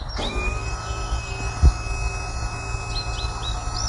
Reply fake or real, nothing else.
real